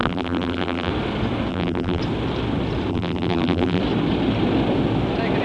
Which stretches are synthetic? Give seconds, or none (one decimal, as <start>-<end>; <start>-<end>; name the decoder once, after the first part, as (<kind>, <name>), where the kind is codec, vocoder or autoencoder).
0.0-0.9 (vocoder, BigVGAN v2); 1.5-2.0; 2.9-3.8